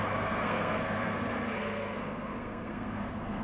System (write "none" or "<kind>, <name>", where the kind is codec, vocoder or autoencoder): codec, SNAC